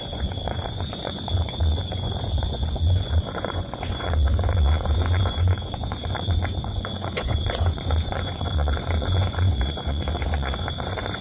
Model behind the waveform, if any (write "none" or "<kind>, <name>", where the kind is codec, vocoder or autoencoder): vocoder, Vocos